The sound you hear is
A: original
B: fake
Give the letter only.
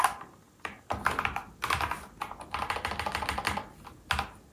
A